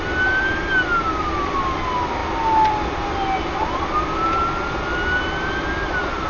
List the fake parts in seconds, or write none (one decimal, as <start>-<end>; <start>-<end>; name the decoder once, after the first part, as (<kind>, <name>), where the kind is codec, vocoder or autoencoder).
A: none

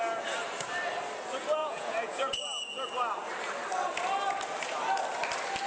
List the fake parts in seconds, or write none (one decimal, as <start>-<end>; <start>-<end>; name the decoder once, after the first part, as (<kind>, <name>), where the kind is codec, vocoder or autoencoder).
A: 1.6-2.4 (vocoder, Vocos)